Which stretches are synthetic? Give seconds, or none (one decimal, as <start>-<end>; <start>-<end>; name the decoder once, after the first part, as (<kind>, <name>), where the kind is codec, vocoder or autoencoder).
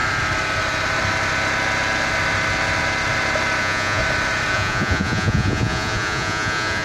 3.6-4.0 (vocoder, Vocos); 4.5-6.8